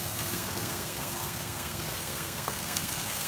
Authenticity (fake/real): fake